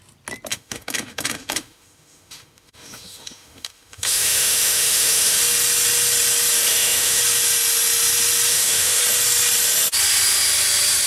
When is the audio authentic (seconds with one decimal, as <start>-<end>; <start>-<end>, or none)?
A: 0.0-0.5; 5.4-6.7; 7.2-8.5; 9.0-11.1